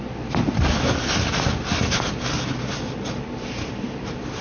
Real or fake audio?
real